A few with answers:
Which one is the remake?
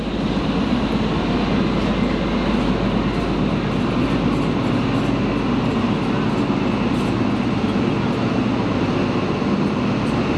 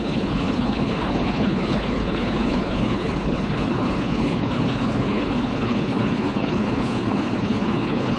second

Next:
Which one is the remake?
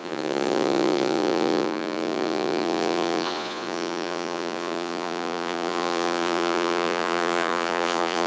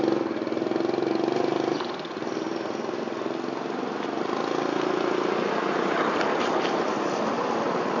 first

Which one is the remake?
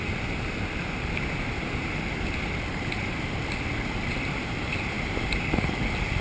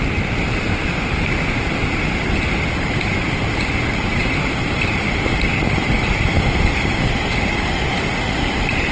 second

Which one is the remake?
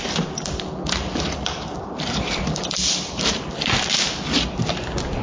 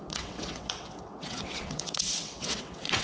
second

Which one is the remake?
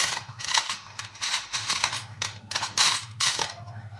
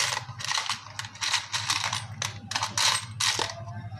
first